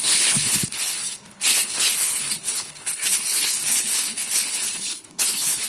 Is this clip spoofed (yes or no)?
yes